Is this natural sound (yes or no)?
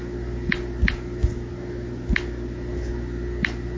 yes